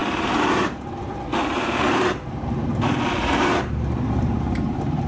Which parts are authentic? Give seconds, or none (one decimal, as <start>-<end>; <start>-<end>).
none

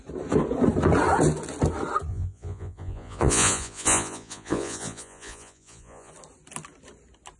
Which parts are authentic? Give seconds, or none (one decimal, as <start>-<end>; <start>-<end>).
0.0-2.1; 6.1-7.4